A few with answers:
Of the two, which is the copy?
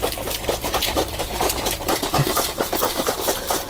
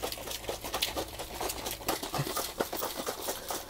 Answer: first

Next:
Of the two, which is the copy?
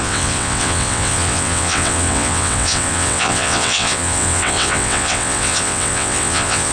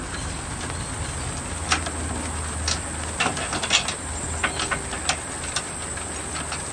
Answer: first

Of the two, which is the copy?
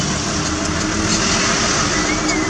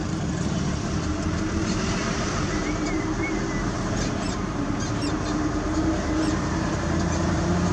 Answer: second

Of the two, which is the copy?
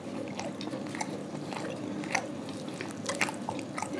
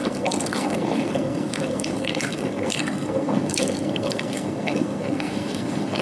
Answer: second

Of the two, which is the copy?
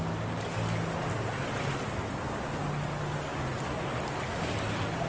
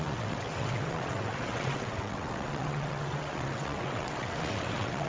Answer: second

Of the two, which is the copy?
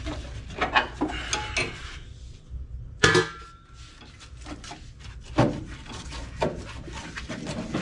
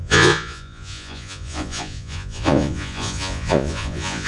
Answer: second